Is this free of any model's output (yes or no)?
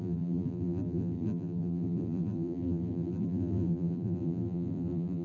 no